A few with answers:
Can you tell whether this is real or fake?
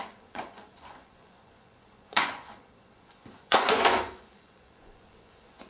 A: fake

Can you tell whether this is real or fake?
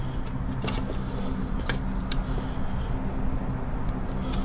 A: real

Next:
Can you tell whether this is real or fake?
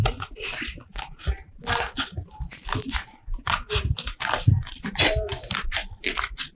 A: real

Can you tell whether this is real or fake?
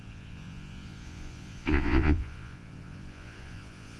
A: fake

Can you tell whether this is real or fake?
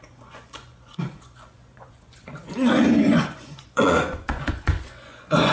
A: fake